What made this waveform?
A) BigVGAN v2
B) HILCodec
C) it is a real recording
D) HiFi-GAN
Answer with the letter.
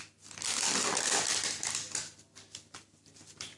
A